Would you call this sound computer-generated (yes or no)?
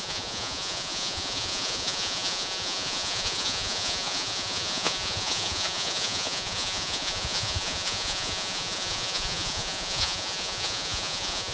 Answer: yes